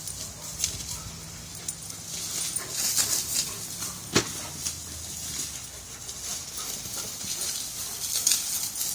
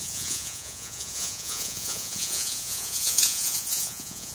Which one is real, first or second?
first